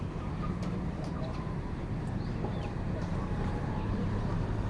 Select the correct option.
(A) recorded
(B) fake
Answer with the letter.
B